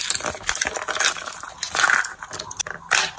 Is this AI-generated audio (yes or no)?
no